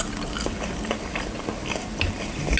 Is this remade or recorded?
recorded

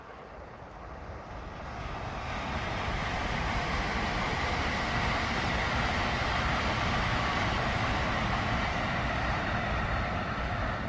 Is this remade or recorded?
recorded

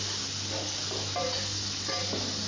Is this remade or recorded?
recorded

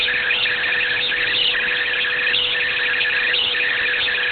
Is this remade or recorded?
remade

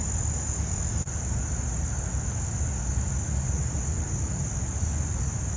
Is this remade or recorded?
recorded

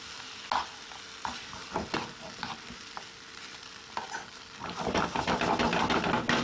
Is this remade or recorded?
recorded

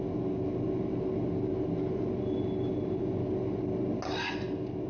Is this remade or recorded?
recorded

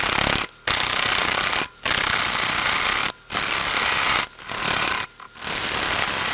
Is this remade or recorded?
recorded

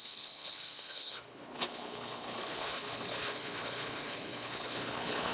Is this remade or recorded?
remade